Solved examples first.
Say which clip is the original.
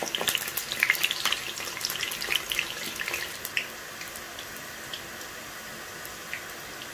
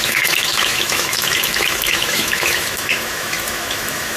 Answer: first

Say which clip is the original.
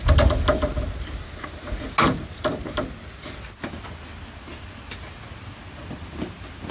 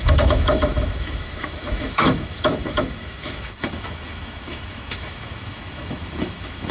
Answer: first